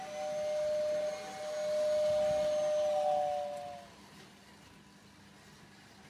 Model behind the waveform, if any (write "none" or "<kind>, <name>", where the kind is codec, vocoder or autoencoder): none